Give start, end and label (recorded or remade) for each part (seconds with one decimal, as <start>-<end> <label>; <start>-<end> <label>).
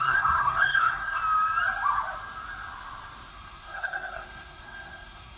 0.0-1.2 remade; 1.2-3.3 recorded; 3.3-5.4 remade